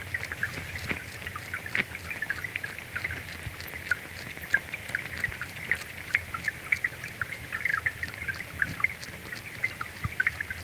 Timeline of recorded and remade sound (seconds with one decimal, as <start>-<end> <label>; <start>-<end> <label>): 0.0-10.6 recorded